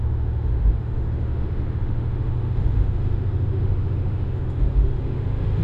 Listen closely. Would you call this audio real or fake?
fake